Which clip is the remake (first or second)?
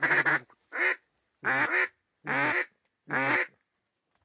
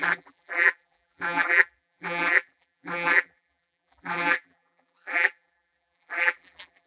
second